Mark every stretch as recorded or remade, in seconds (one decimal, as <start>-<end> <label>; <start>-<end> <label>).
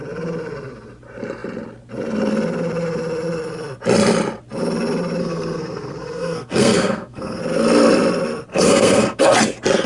0.0-5.2 recorded; 5.2-7.4 remade; 7.4-8.5 recorded; 8.5-9.2 remade; 9.2-9.9 recorded